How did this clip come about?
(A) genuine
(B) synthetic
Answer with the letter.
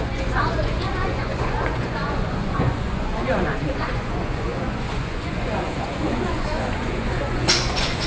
B